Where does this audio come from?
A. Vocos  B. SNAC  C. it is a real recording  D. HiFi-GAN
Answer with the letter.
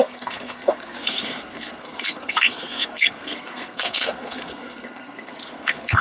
B